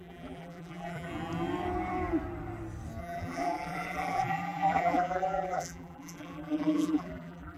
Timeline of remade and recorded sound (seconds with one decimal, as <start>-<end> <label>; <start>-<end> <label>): 0.0-1.1 remade; 1.1-3.0 recorded; 3.0-7.6 remade